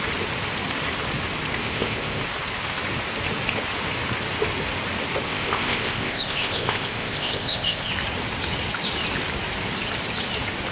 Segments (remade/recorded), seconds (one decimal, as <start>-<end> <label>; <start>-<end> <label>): 0.0-1.6 recorded; 1.6-2.2 remade; 2.2-5.3 recorded; 5.3-7.9 remade; 7.9-10.7 recorded